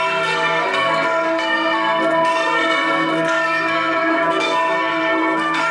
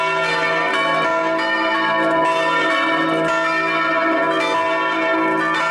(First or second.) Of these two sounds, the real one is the second